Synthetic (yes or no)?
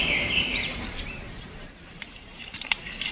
yes